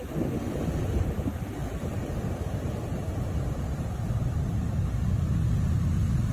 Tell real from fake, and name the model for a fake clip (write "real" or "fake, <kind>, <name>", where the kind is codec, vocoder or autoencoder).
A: real